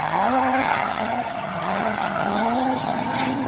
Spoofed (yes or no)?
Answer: yes